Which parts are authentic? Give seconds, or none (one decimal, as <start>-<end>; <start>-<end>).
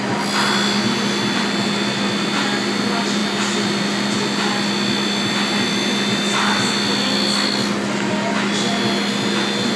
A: 0.0-9.8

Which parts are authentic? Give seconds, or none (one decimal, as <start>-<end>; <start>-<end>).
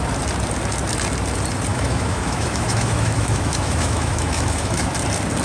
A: 0.0-1.7; 4.9-5.4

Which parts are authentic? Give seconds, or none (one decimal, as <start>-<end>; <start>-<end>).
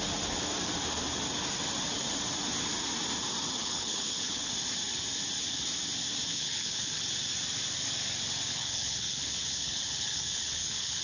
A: 0.0-3.6; 4.5-6.3; 7.0-8.5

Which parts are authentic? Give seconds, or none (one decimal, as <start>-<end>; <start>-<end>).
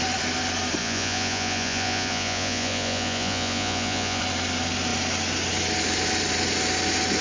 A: 0.0-0.8; 4.2-7.2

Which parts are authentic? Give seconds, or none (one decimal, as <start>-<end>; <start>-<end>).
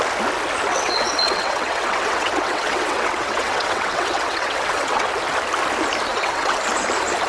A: 0.0-0.7; 5.1-6.1; 6.6-7.3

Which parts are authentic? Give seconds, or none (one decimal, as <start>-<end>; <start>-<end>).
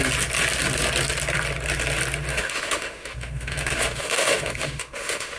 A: 0.0-2.3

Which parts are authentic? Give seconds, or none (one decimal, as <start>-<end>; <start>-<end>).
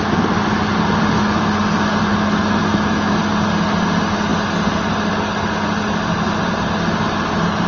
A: 0.0-2.1; 3.2-7.7